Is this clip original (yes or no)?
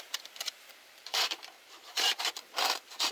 no